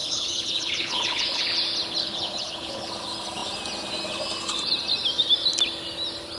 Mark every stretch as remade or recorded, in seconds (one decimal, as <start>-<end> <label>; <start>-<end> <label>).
0.0-1.4 remade; 1.4-2.0 recorded; 2.0-2.9 remade; 2.9-6.4 recorded